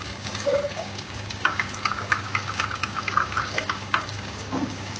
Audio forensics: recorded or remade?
remade